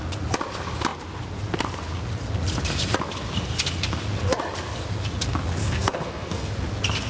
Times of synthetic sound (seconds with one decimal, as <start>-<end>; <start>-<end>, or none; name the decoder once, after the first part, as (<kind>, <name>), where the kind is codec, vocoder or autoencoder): 5.6-6.5 (codec, SNAC)